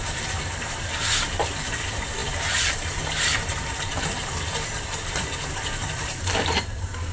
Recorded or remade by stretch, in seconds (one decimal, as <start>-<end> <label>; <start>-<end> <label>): 0.0-7.1 remade